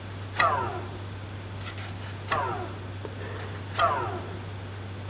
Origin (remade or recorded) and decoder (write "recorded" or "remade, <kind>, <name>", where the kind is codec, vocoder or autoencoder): recorded